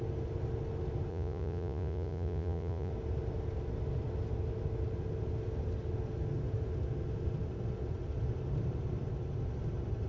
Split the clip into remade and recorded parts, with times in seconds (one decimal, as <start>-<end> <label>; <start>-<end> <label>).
0.0-1.1 recorded; 1.1-2.9 remade; 2.9-10.1 recorded